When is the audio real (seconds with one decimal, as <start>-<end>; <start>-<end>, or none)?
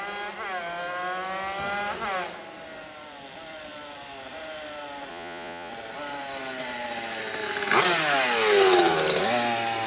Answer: 0.0-5.1; 5.7-9.9